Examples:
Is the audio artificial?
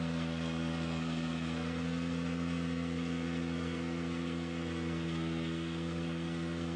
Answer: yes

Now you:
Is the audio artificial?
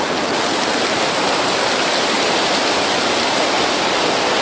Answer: no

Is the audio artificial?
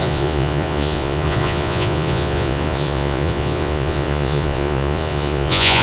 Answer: yes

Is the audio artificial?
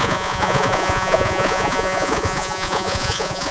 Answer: yes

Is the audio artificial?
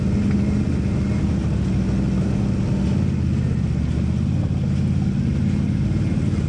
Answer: no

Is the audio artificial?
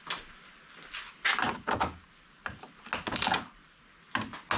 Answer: no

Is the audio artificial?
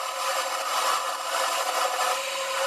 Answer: no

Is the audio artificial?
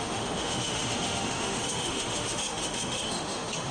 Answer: yes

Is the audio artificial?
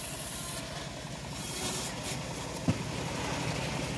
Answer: no